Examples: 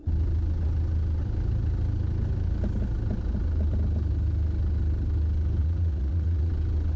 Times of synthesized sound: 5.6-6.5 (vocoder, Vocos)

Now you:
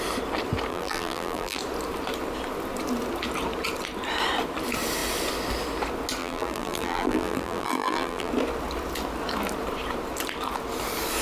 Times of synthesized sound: 0.7-1.6 (vocoder, BigVGAN v2); 6.2-8.3

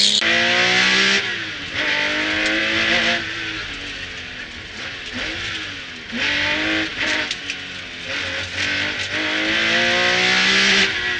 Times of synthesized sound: 6.9-7.4 (vocoder, BigVGAN v2)

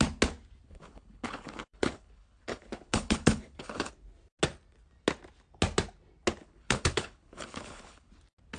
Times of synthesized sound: 0.7-3.9 (codec, HILCodec); 6.4-8.1